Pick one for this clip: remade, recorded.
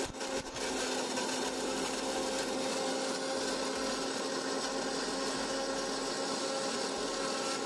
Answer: recorded